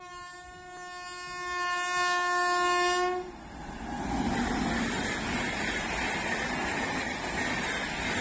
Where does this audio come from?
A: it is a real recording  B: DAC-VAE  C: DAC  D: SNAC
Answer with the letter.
A